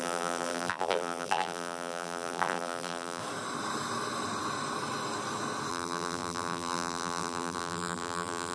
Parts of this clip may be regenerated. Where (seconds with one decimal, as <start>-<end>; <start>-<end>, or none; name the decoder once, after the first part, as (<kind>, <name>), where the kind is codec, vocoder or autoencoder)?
0.0-3.2 (vocoder, BigVGAN v2); 5.7-8.5